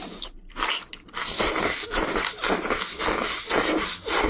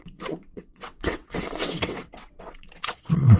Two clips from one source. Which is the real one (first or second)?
first